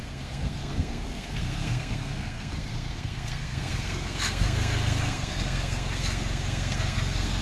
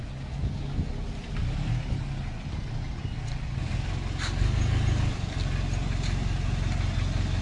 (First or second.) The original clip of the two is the second